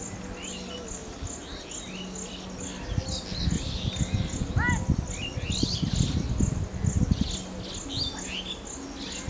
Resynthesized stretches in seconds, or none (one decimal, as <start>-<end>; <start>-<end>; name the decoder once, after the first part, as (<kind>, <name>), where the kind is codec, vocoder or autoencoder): none